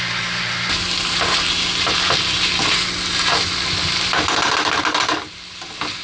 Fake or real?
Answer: real